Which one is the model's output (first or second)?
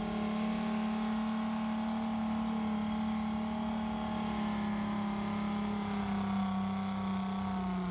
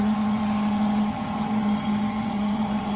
second